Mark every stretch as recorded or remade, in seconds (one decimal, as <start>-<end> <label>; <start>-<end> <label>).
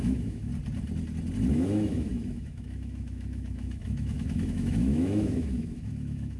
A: 0.0-0.5 remade; 0.5-1.5 recorded; 1.5-6.4 remade